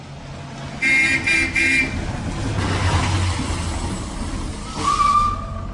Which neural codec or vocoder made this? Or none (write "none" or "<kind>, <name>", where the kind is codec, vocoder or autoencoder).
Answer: none